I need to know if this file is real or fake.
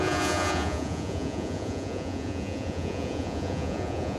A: fake